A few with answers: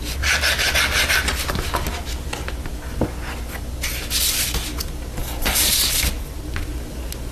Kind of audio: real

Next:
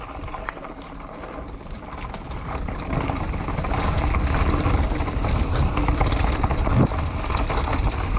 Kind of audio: real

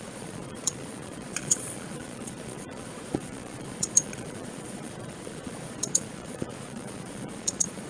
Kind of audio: fake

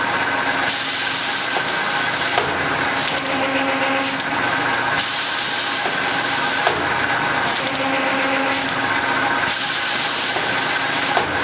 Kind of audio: real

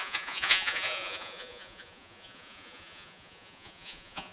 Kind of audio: fake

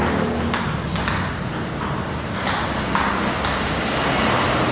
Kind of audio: real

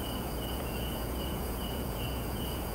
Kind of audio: fake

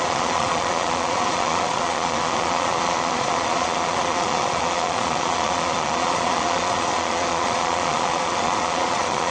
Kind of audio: fake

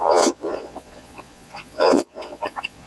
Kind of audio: fake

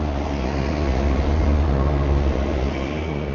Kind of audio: fake